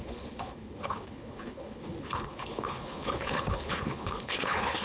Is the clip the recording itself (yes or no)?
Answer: no